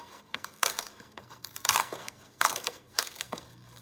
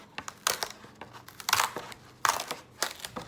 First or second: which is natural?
second